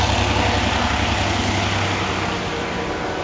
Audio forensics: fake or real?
real